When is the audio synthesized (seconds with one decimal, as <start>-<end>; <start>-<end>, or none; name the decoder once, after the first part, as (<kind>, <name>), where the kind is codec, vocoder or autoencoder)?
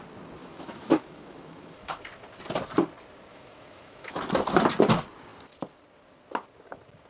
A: 0.4-2.0 (autoencoder, DAC-VAE); 3.3-4.2